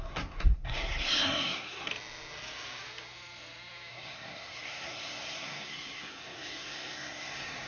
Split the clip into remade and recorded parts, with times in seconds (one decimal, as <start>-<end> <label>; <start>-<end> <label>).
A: 0.0-1.9 remade; 1.9-3.9 recorded; 3.9-7.7 remade